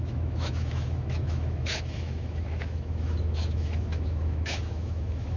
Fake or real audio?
fake